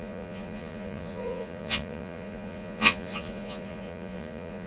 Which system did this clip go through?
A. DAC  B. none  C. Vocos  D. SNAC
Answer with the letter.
C